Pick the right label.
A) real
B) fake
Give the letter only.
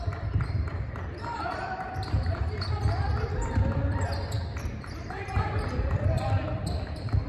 B